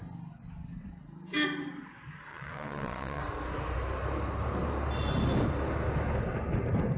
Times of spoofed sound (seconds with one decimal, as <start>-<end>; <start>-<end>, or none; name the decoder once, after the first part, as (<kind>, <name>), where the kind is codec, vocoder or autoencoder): 2.3-3.2 (vocoder, WaveNeXt)